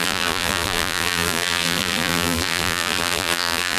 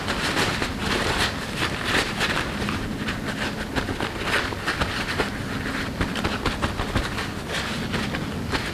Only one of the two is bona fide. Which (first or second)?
second